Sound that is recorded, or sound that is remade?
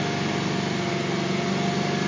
recorded